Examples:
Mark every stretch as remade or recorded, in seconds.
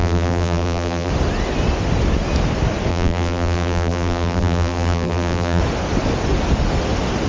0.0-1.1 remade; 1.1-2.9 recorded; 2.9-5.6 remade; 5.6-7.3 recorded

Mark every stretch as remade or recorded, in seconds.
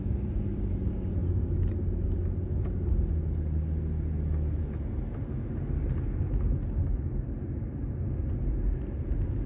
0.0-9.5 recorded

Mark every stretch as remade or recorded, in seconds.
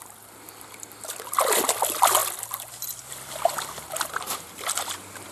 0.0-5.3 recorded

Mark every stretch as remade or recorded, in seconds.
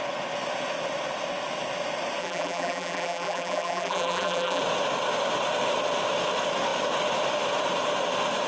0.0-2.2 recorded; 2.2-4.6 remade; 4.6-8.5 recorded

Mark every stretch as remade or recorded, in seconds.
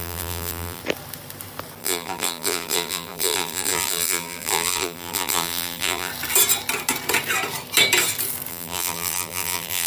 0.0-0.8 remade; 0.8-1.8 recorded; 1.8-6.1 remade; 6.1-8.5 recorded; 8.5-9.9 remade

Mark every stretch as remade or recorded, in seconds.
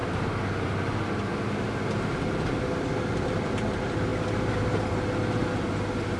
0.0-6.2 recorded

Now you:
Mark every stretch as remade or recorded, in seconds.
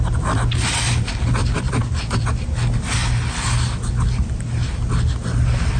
0.0-1.4 recorded; 1.4-2.3 remade; 2.3-5.8 recorded